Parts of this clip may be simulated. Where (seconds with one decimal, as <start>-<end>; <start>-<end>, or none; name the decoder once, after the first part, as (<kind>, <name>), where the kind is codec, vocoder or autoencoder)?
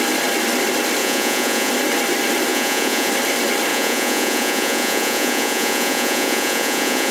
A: 1.0-1.7 (vocoder, Vocos); 2.5-3.1; 3.7-7.1